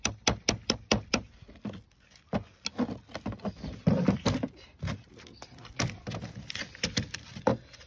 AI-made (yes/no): no